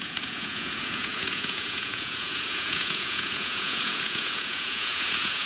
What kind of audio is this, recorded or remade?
remade